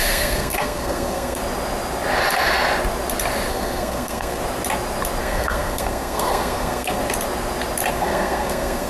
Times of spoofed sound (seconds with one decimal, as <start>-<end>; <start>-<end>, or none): 0.0-1.4; 3.5-4.4; 5.2-7.0; 7.9-8.9